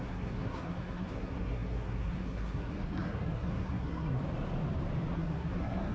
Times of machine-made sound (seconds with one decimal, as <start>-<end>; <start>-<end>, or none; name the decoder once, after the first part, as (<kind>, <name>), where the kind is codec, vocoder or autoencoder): 0.0-4.2 (codec, SNAC); 5.1-5.9